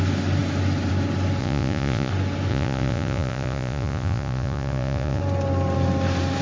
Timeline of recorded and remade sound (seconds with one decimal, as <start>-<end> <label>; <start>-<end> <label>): 0.0-1.4 recorded; 1.4-2.1 remade; 2.1-2.5 recorded; 2.5-5.2 remade; 5.2-6.4 recorded